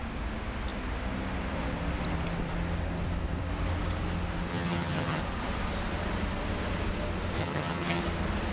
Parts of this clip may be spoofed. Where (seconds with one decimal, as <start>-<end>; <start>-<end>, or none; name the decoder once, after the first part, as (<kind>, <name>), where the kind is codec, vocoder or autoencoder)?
4.5-5.2 (vocoder, HiFi-GAN); 7.4-8.0